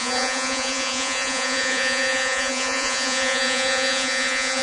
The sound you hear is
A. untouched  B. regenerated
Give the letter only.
B